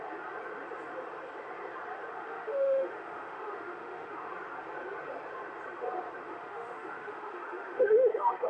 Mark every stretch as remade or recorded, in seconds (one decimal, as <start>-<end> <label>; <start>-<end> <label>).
0.0-2.1 recorded; 2.1-4.3 remade; 4.3-6.3 recorded; 6.3-8.5 remade